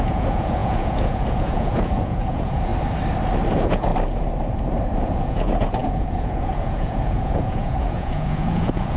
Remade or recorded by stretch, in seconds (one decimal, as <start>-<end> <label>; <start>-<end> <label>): 0.0-2.7 remade; 2.7-3.5 recorded; 3.5-3.9 remade; 3.9-5.0 recorded; 5.0-9.0 remade